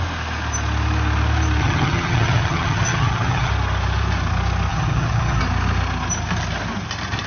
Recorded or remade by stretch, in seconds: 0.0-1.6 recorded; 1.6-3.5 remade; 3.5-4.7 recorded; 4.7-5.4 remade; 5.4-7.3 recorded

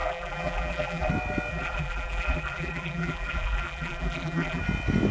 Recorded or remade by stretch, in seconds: 0.0-1.1 remade; 1.1-1.5 recorded; 1.5-4.6 remade; 4.6-5.1 recorded

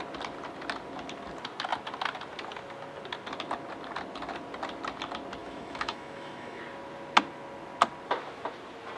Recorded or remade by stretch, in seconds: 0.0-5.4 recorded; 5.4-6.6 remade; 6.6-9.0 recorded

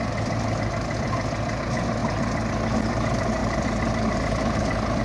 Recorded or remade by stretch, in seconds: 0.0-3.4 recorded; 3.4-5.0 remade

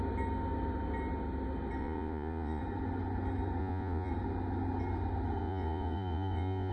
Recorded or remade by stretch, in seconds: 0.0-1.8 recorded; 1.8-2.6 remade; 2.6-3.6 recorded; 3.6-4.1 remade; 4.1-5.4 recorded; 5.4-6.7 remade